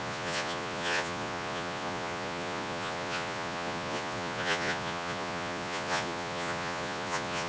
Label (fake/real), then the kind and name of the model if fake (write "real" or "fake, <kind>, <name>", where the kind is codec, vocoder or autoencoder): fake, vocoder, Vocos